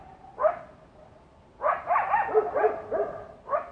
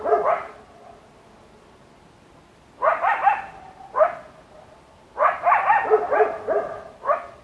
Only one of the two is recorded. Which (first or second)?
second